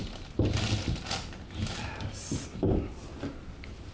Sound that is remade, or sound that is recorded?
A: recorded